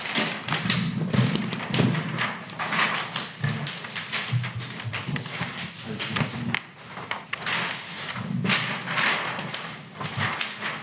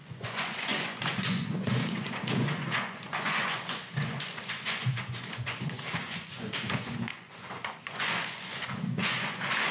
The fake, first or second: second